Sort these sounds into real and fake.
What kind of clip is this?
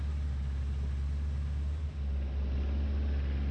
real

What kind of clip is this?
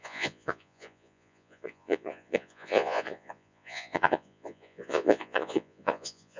fake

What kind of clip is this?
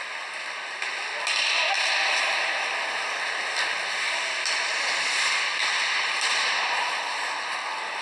real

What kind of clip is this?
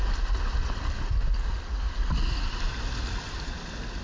real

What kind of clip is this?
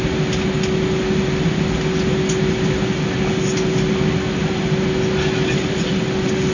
real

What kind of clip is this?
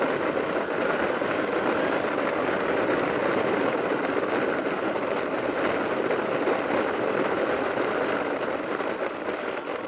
real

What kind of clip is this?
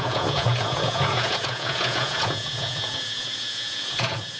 fake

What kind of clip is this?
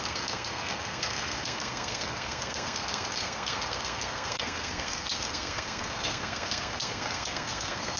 fake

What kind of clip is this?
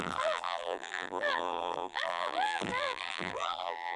fake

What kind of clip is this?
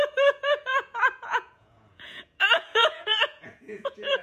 fake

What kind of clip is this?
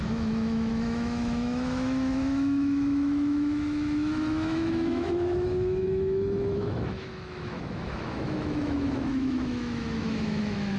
fake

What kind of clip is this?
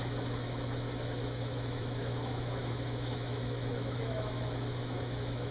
fake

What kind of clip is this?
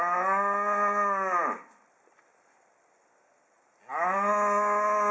real